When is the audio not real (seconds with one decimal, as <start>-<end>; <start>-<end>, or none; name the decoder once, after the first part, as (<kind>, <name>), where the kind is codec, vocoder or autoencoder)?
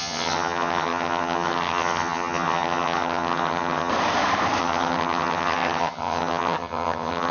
0.0-3.9 (vocoder, HiFi-GAN); 4.6-7.3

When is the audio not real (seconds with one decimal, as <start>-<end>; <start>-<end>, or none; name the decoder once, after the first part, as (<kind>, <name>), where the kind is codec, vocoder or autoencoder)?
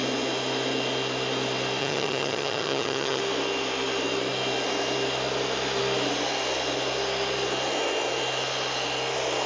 1.8-3.2 (vocoder, HiFi-GAN)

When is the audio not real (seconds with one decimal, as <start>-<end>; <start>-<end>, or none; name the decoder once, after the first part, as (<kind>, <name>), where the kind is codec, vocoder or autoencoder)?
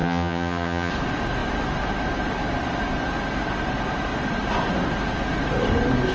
0.0-0.9 (vocoder, HiFi-GAN)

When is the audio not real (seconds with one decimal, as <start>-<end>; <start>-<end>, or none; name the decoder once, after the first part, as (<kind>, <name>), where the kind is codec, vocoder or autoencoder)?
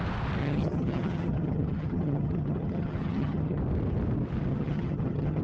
0.4-3.6 (vocoder, HiFi-GAN); 4.5-5.4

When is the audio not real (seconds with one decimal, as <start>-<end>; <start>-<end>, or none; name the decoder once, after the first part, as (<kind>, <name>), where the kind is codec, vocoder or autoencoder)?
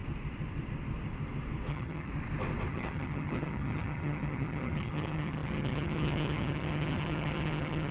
1.7-2.1 (vocoder, HiFi-GAN); 2.7-7.9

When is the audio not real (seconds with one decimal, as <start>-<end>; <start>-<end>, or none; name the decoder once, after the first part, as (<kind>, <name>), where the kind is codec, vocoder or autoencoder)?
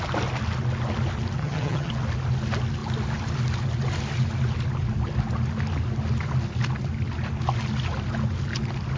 1.4-1.9 (vocoder, HiFi-GAN)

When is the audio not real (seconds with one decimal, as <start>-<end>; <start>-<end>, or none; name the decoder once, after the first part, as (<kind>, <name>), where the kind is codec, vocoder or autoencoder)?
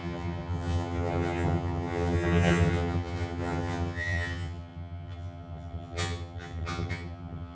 0.0-7.5 (vocoder, HiFi-GAN)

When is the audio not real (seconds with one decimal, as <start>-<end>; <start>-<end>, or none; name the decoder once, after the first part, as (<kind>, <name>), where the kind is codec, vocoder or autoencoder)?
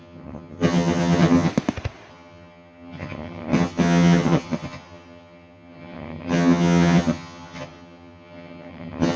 0.0-1.5 (vocoder, HiFi-GAN); 2.1-9.2